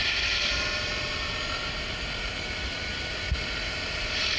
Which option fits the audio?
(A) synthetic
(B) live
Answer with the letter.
A